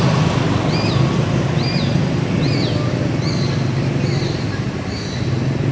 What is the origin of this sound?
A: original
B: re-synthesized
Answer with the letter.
A